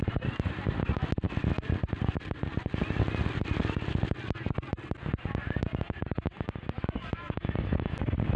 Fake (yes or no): no